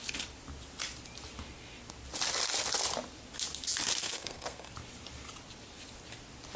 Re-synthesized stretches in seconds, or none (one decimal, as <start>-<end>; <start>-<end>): 4.0-4.7